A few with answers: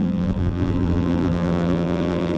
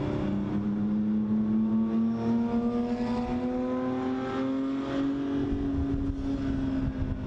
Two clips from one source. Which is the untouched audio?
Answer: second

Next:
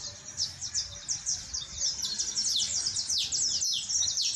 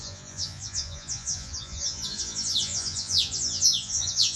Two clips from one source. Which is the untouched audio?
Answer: first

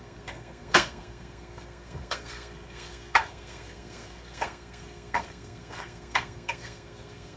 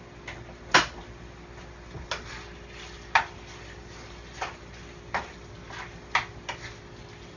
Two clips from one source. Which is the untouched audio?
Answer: second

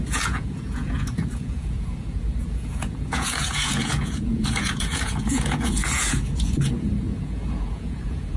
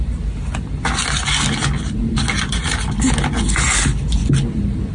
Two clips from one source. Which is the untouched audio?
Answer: second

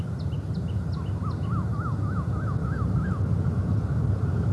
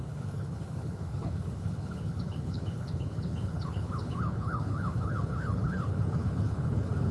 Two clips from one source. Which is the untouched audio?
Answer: first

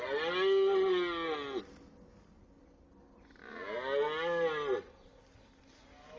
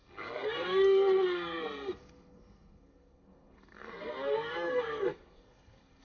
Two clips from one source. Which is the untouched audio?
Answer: first